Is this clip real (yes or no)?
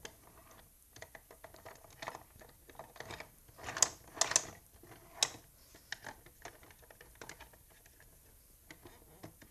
yes